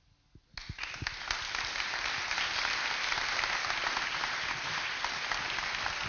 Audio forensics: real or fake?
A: real